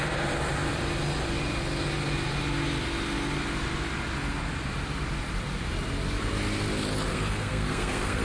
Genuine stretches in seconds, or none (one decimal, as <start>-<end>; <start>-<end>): 0.0-7.1